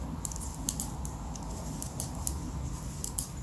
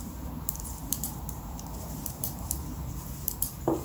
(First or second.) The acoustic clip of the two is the first